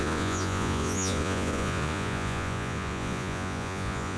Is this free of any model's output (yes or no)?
no